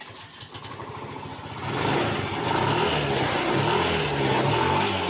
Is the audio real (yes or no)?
yes